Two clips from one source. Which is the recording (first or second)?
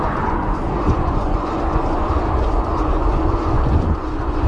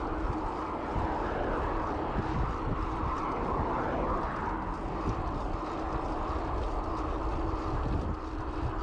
second